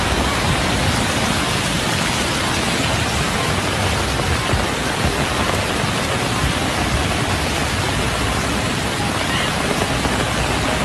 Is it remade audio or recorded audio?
recorded